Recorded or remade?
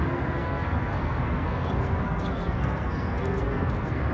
remade